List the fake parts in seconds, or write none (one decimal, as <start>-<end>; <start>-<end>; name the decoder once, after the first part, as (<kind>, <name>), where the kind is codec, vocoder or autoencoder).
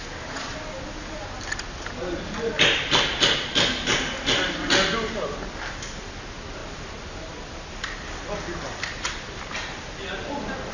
none